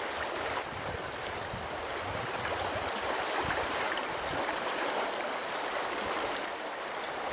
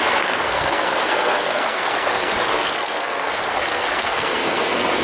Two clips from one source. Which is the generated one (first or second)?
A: second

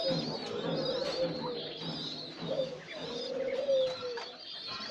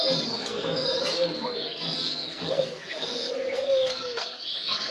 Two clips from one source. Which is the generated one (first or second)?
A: second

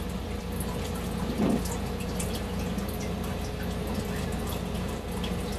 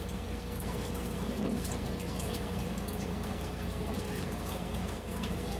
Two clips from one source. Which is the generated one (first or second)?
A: second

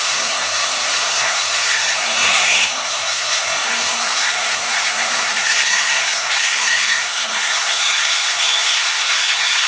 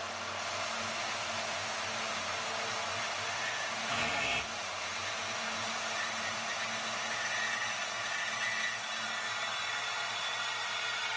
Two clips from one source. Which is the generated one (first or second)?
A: first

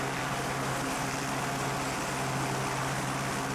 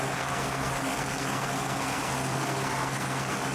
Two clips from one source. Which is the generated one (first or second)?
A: second